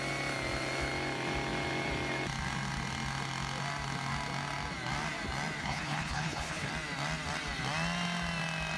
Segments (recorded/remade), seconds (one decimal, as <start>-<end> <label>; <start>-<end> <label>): 0.0-5.6 recorded; 5.6-6.7 remade; 6.7-8.8 recorded